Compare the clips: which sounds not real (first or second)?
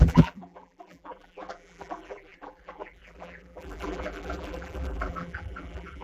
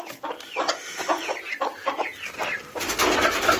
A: first